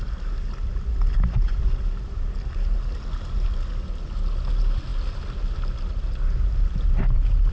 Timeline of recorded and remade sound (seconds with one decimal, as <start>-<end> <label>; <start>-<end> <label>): 0.0-7.5 recorded